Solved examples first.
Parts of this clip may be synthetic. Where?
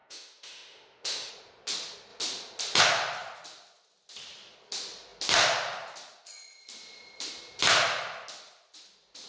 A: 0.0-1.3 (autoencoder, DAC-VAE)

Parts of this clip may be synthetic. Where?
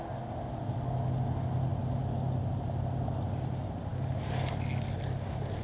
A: none